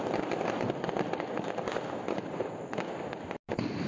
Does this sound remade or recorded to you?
recorded